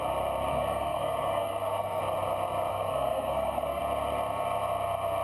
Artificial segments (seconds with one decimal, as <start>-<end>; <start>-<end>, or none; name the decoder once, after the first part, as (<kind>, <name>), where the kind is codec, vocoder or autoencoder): 0.5-2.0 (codec, SNAC); 2.7-3.8